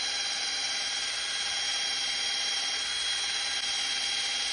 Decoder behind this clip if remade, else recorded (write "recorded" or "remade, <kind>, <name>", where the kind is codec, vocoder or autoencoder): recorded